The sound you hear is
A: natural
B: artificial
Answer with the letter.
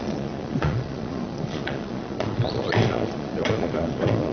B